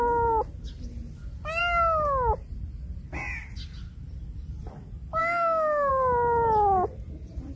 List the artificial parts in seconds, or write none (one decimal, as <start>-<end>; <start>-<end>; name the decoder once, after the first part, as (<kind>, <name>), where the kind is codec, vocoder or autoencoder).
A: 5.2-5.9 (autoencoder, DAC-VAE)

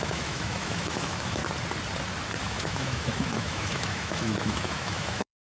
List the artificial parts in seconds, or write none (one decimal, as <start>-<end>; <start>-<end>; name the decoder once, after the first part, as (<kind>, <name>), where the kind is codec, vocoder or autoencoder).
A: 0.0-1.4 (autoencoder, DAC-VAE); 2.4-5.5

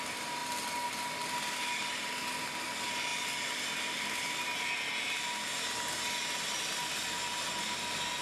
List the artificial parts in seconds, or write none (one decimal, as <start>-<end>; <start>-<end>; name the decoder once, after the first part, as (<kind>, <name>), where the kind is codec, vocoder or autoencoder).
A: none

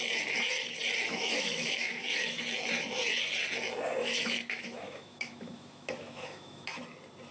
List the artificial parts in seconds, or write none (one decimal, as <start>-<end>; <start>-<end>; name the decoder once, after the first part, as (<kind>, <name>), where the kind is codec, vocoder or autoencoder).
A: 1.1-2.4 (autoencoder, DAC-VAE); 4.0-6.8

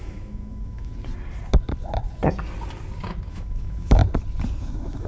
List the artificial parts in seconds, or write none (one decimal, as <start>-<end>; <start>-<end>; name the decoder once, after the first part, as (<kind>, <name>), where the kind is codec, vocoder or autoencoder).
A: 0.0-0.9 (autoencoder, DAC-VAE); 3.3-4.0; 4.6-5.1

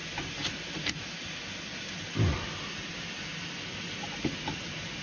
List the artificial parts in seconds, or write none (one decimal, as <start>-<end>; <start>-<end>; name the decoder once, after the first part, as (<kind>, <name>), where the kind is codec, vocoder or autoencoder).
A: none

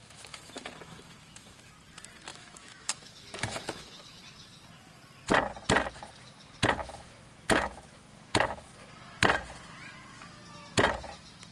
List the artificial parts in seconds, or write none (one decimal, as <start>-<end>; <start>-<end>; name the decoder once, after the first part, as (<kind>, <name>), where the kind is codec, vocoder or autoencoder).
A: 0.0-1.7 (autoencoder, DAC-VAE); 2.3-4.2; 6.8-8.7